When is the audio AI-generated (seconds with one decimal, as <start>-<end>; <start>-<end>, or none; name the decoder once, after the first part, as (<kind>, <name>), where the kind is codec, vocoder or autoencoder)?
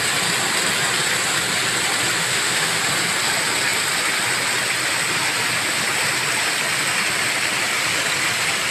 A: 2.2-2.8 (autoencoder, DAC-VAE)